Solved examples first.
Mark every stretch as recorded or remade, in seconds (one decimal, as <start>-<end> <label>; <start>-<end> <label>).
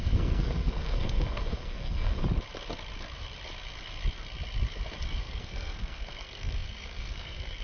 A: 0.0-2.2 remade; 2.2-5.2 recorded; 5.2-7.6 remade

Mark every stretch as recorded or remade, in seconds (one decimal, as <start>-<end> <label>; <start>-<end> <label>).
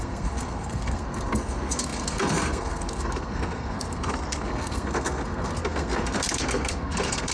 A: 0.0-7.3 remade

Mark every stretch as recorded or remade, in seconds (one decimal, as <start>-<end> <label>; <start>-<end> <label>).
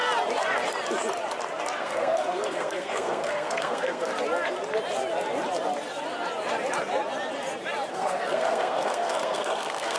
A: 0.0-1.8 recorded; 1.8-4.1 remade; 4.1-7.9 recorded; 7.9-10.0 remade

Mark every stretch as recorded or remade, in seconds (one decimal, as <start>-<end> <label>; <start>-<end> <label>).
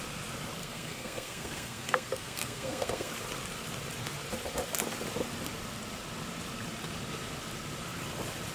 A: 0.0-0.6 recorded; 0.6-3.1 remade; 3.1-8.5 recorded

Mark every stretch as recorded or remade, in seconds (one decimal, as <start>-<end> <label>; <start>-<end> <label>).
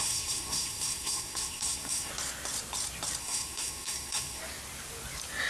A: 0.0-2.1 remade; 2.1-3.2 recorded; 3.2-4.4 remade; 4.4-5.5 recorded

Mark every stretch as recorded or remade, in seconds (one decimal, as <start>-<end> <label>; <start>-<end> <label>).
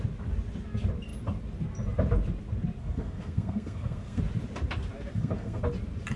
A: 0.0-2.8 recorded; 2.8-4.2 remade; 4.2-5.1 recorded; 5.1-5.6 remade; 5.6-6.2 recorded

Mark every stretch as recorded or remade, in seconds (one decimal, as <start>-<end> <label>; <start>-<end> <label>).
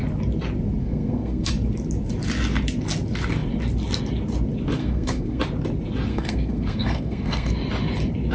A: 0.0-0.8 recorded; 0.8-1.5 remade; 1.5-4.8 recorded; 4.8-5.4 remade; 5.4-6.1 recorded; 6.1-7.5 remade; 7.5-8.3 recorded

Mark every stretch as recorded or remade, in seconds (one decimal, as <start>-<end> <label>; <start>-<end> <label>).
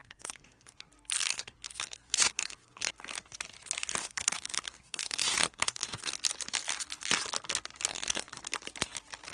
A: 0.0-0.9 remade; 0.9-1.3 recorded; 1.3-2.9 remade; 2.9-4.0 recorded; 4.0-6.1 remade; 6.1-7.9 recorded; 7.9-8.4 remade; 8.4-9.3 recorded